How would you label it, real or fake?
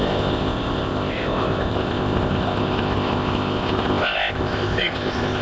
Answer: fake